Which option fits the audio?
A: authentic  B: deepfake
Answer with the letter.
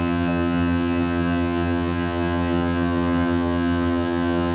B